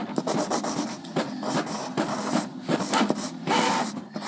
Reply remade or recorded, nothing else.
recorded